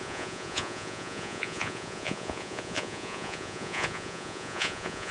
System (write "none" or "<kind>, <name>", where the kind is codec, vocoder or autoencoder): vocoder, Vocos